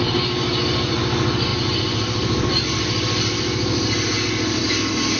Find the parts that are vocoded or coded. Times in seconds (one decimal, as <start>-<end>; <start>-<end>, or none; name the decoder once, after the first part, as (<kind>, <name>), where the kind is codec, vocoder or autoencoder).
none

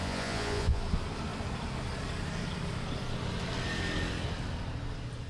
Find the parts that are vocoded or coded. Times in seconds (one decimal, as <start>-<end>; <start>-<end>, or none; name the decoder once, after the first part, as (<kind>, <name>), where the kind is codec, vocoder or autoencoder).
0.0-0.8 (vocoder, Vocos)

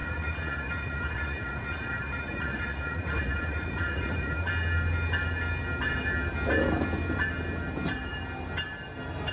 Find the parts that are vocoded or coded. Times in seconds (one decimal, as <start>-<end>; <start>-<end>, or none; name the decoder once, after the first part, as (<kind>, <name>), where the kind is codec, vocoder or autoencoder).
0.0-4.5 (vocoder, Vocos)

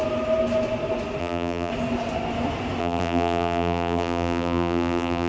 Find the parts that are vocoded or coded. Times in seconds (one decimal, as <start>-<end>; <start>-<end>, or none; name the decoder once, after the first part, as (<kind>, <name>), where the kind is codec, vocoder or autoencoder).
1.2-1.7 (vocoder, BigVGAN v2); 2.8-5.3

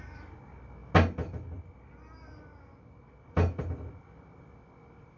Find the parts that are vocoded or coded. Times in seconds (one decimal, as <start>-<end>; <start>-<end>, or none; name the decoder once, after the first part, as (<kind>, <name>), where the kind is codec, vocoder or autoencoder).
none

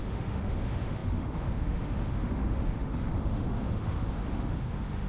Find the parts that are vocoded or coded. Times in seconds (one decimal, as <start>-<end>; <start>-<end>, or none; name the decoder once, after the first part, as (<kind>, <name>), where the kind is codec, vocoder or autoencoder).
0.0-5.1 (autoencoder, DAC-VAE)

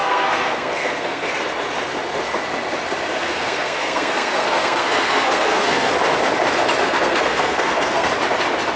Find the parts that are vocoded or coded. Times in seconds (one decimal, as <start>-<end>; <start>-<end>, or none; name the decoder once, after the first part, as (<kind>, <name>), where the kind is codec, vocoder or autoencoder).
0.0-1.3 (codec, SNAC); 3.1-5.9; 6.8-8.1

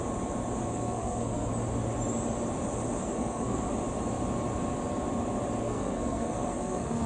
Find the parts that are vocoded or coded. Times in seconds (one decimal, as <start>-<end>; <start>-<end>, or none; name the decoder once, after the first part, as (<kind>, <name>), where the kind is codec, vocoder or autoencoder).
0.6-1.5 (codec, SNAC); 3.0-3.7; 5.6-7.1